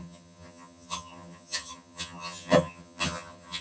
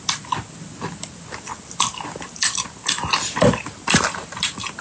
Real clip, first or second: second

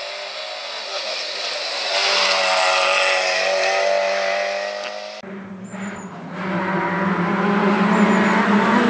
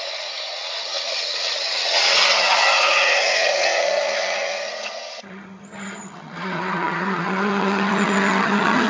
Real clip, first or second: first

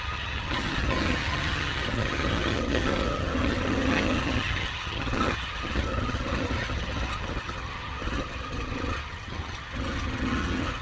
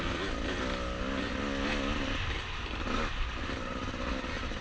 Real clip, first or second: second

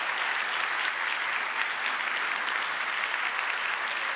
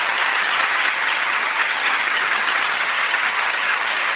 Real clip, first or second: first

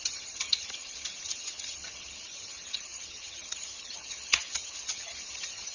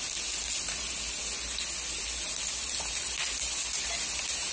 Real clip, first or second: second